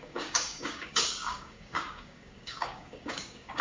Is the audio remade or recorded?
remade